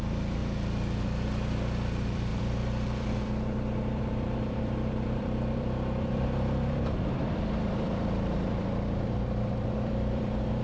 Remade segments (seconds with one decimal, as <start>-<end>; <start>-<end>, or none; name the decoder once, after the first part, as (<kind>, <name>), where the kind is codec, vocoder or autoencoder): 0.0-0.4 (vocoder, BigVGAN v2); 1.9-10.6